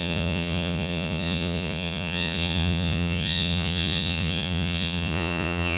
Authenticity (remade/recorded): remade